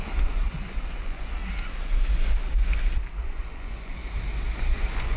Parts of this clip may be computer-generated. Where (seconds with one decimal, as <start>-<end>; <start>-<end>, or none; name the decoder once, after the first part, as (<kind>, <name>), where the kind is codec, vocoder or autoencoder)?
0.0-1.4 (vocoder, Vocos); 3.2-4.0; 4.6-5.2